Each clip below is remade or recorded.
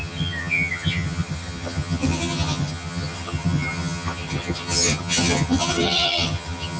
remade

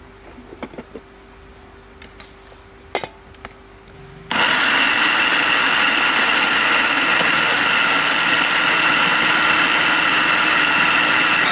recorded